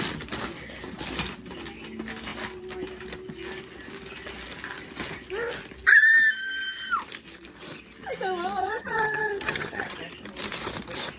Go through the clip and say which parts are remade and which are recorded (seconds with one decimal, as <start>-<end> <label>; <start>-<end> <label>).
0.0-8.6 recorded; 8.6-10.0 remade; 10.0-11.2 recorded